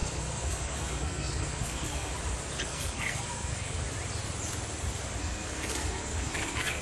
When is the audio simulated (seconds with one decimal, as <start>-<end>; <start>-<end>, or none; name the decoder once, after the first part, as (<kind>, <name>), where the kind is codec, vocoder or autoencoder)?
0.0-2.1 (codec, SNAC); 2.6-3.8; 5.2-6.8